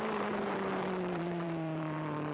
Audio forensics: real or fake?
fake